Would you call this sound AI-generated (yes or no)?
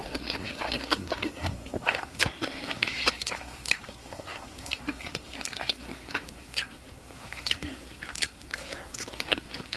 yes